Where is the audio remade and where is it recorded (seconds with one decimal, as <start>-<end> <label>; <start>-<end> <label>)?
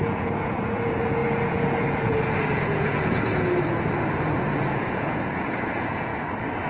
0.0-6.1 remade; 6.1-6.7 recorded